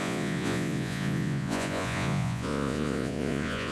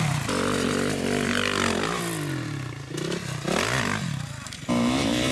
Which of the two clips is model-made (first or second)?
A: first